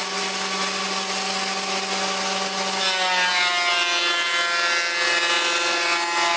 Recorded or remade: recorded